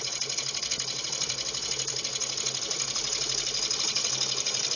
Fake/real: real